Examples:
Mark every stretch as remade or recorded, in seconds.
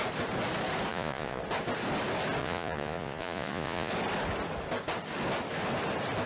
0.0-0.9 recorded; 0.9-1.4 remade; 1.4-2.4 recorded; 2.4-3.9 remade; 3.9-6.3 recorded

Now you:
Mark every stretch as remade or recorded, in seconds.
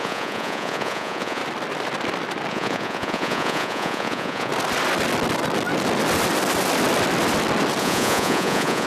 0.0-1.4 remade; 1.4-2.5 recorded; 2.5-4.5 remade; 4.5-7.8 recorded; 7.8-8.9 remade